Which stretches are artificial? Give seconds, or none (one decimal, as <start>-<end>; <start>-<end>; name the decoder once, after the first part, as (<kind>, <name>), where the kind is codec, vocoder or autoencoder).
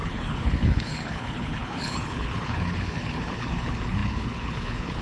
0.0-5.0 (codec, HILCodec)